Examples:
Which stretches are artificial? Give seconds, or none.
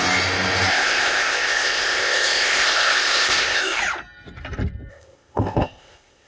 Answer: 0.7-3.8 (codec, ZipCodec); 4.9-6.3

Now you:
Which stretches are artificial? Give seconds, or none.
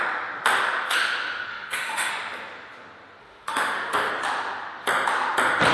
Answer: 1.5-2.1 (autoencoder, DAC-VAE); 3.2-4.1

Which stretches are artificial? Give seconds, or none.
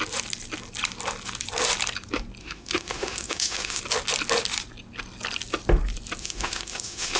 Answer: 2.4-3.8 (autoencoder, DAC-VAE); 6.2-7.2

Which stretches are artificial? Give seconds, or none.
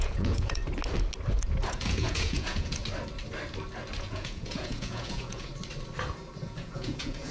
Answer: 0.0-0.6 (vocoder, Vocos); 1.7-2.8; 4.0-5.5; 6.4-7.3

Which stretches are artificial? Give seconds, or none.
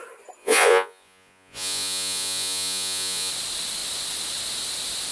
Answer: 0.4-3.3 (vocoder, Vocos)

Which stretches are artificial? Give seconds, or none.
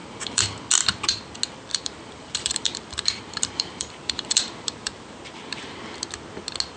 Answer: 0.0-0.6 (vocoder, BigVGAN v2); 1.7-5.8